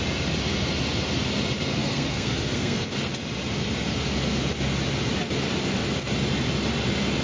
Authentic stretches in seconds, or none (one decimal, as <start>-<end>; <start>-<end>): 0.0-1.8; 3.1-7.2